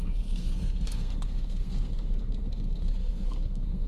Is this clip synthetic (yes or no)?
yes